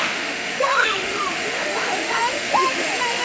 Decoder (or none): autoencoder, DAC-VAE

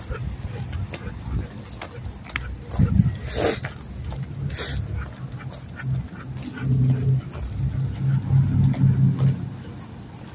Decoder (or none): none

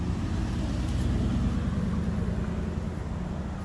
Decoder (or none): none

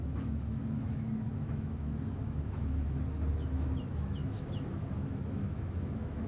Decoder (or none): autoencoder, DAC-VAE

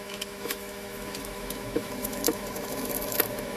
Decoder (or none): autoencoder, DAC-VAE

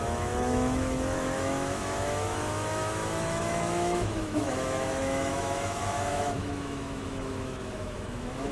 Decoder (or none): autoencoder, DAC-VAE